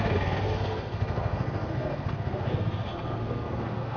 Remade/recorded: remade